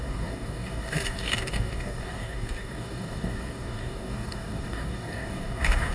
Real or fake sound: fake